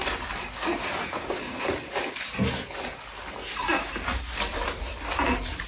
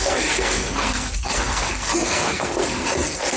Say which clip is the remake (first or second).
second